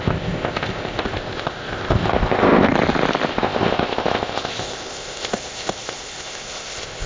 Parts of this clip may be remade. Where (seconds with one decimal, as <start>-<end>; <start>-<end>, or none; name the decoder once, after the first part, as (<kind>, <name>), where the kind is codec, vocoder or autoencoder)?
0.0-2.7 (codec, ZipCodec); 3.3-7.1